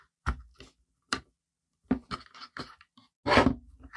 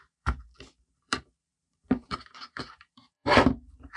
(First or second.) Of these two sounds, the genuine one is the first